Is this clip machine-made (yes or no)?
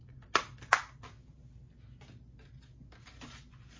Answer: no